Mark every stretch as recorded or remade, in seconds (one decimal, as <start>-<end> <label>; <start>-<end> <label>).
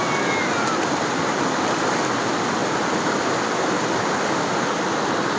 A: 0.0-5.4 recorded